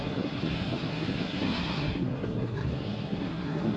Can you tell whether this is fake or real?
fake